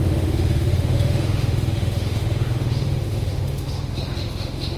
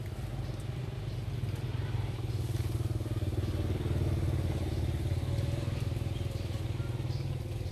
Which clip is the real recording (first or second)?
second